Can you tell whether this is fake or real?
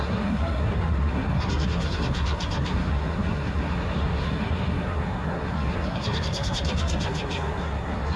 fake